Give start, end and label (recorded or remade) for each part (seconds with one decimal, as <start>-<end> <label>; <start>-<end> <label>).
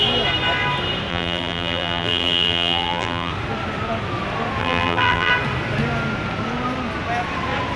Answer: 0.0-1.1 recorded; 1.1-3.3 remade; 3.3-4.6 recorded; 4.6-5.3 remade; 5.3-7.8 recorded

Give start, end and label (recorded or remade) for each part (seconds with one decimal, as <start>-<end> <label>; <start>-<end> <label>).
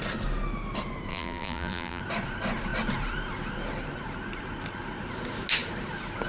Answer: 0.0-1.1 recorded; 1.1-2.0 remade; 2.0-6.3 recorded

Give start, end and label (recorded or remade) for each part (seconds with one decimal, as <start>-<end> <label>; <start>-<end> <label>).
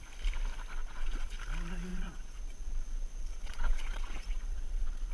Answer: 0.0-0.8 recorded; 0.8-1.4 remade; 1.4-1.9 recorded; 1.9-5.1 remade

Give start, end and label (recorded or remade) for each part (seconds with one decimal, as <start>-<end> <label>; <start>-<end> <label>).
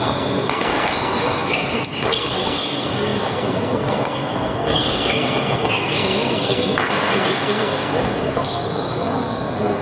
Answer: 0.0-9.8 remade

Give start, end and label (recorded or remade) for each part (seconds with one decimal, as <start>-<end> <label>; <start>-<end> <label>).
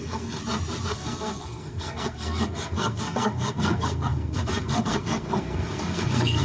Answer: 0.0-0.4 remade; 0.4-0.9 recorded; 0.9-6.4 remade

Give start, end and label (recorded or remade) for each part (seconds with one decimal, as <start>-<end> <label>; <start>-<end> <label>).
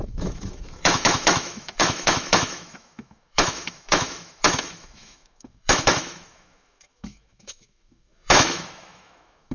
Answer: 0.0-9.5 remade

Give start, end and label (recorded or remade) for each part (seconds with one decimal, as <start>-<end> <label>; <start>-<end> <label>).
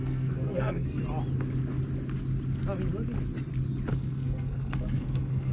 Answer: 0.0-1.0 remade; 1.0-3.9 recorded; 3.9-5.5 remade